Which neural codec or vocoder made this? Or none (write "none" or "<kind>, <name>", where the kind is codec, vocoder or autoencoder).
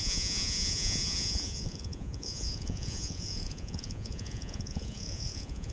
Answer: vocoder, Vocos